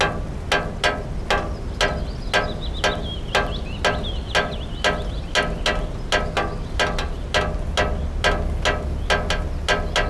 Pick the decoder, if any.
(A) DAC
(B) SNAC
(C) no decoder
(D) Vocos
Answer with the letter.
C